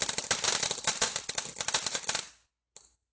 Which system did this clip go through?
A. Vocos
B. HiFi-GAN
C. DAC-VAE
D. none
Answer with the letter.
D